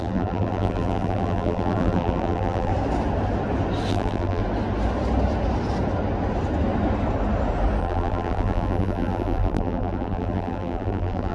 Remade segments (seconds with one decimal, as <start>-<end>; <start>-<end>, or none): 0.0-2.7; 3.9-4.4; 7.8-11.3